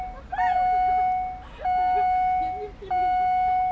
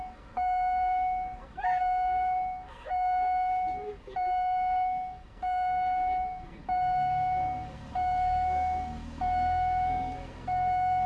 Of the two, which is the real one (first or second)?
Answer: first